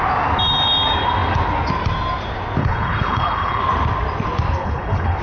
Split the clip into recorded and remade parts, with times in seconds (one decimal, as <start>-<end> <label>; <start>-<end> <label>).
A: 0.0-2.6 recorded; 2.6-3.6 remade; 3.6-4.6 recorded; 4.6-5.2 remade